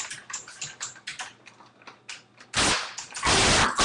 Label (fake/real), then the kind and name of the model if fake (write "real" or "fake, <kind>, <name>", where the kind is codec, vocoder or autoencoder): real